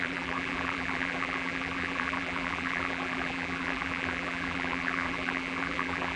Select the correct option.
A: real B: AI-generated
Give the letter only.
B